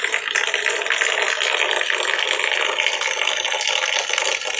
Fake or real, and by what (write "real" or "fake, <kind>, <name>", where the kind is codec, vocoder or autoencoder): real